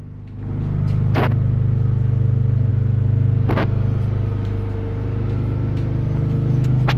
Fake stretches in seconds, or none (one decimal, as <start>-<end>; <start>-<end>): none